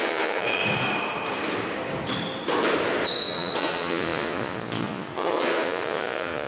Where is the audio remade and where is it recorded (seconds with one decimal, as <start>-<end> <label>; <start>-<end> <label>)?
0.0-0.6 remade; 0.6-3.1 recorded; 3.1-6.5 remade